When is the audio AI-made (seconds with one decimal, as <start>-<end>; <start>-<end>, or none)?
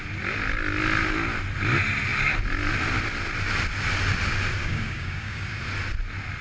4.6-5.6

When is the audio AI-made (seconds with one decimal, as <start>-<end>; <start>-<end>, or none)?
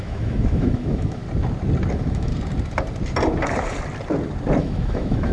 0.0-1.2; 1.9-2.3; 4.6-5.3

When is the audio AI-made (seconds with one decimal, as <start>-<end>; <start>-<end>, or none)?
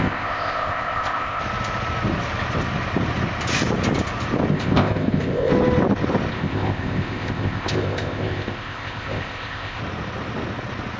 0.0-1.4; 4.5-5.5; 6.3-9.8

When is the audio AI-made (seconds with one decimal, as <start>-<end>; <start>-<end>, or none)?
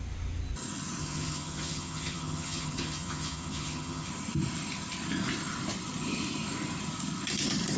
1.0-4.1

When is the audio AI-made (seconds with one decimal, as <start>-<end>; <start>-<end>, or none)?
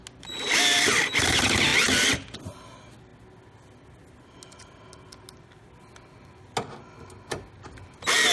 none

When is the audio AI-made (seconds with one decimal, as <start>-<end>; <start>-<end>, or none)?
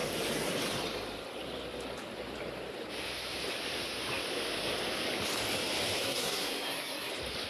6.0-7.1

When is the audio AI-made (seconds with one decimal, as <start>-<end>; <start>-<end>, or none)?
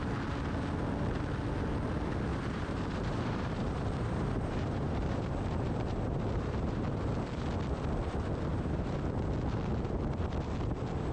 2.3-7.1; 8.5-9.2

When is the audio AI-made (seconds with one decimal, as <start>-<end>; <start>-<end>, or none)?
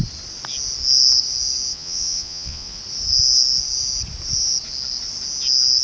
1.7-2.8